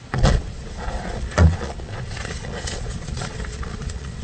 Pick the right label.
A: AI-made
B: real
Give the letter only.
A